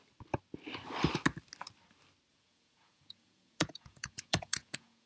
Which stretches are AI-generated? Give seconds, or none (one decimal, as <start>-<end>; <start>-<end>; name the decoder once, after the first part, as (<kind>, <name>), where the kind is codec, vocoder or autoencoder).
2.3-5.1 (vocoder, Vocos)